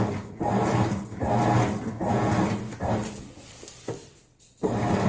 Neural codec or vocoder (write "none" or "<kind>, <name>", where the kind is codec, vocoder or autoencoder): none